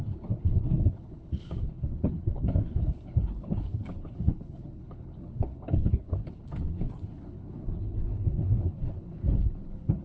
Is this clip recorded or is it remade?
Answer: remade